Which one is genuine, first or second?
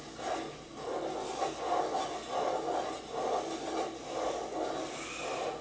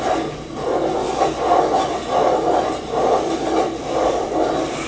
first